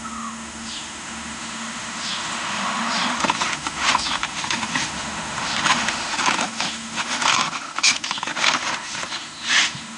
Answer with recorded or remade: remade